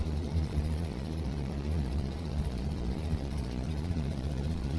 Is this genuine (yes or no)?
no